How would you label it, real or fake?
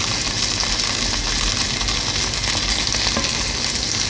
real